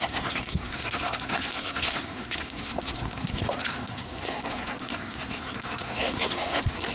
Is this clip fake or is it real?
fake